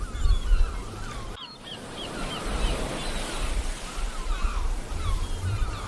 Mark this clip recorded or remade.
recorded